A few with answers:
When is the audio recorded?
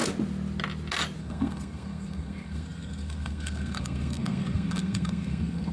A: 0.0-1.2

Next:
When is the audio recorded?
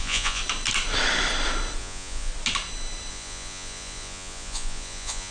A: 0.4-1.8; 2.3-3.1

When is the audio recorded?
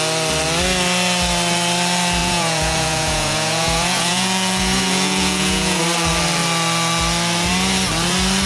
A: 0.0-2.2; 5.8-8.5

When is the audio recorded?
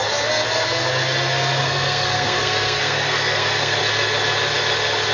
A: 0.0-1.6; 3.8-5.1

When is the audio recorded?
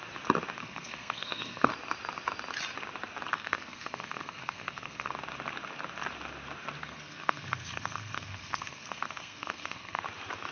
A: 0.0-0.6; 1.7-3.3; 5.1-6.8; 10.0-10.5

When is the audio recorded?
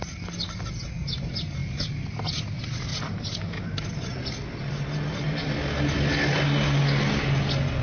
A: 0.0-7.8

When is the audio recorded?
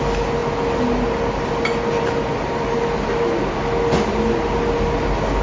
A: 0.0-5.4